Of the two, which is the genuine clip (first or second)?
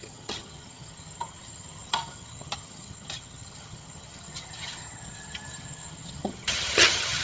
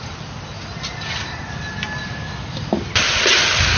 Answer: second